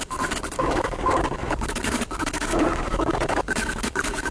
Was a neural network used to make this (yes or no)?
yes